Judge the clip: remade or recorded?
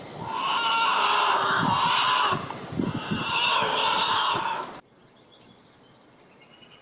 recorded